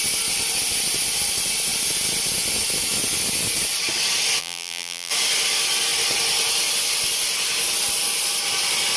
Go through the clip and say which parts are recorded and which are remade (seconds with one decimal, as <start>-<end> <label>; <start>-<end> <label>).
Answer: 0.0-4.4 recorded; 4.4-5.1 remade; 5.1-9.0 recorded